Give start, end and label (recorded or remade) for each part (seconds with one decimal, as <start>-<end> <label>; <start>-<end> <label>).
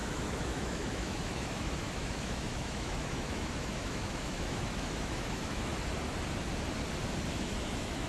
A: 0.0-5.7 remade; 5.7-7.3 recorded; 7.3-8.1 remade